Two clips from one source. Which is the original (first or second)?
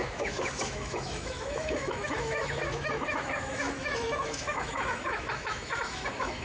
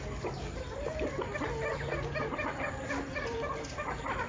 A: second